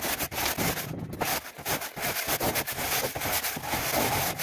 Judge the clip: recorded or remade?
recorded